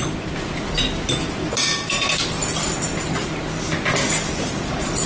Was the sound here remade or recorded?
recorded